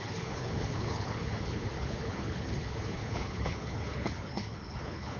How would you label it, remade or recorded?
remade